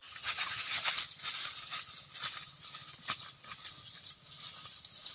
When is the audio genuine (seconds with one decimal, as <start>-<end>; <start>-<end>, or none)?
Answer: 0.9-5.1